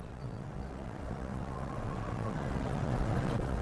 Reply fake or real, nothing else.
fake